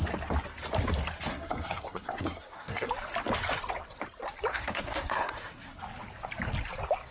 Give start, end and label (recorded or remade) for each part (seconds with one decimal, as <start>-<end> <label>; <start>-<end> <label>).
0.0-1.3 recorded; 1.3-2.9 remade; 2.9-4.5 recorded; 4.5-5.8 remade; 5.8-7.1 recorded